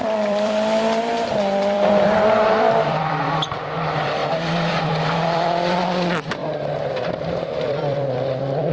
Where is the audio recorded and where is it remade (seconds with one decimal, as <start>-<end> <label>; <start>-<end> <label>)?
0.0-4.2 remade; 4.2-4.8 recorded; 4.8-8.7 remade